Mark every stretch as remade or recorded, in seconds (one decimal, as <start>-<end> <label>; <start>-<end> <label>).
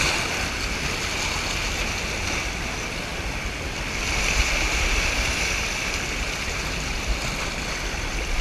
0.0-8.4 recorded